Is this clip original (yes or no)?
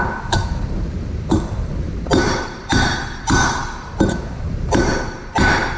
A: no